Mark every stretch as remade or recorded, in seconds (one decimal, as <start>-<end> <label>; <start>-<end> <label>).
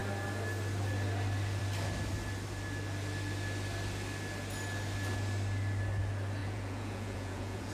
0.0-6.4 recorded; 6.4-7.7 remade